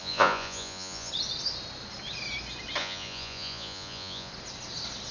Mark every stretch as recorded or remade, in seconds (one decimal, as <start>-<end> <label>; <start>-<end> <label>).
0.0-1.1 remade; 1.1-2.8 recorded; 2.8-4.3 remade; 4.3-5.1 recorded